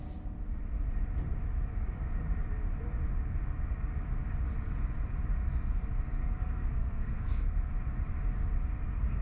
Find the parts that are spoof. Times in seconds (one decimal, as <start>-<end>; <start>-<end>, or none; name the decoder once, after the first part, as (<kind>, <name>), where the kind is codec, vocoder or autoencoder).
6.2-7.7 (codec, SNAC)